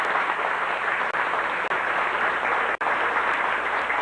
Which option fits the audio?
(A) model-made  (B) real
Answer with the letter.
B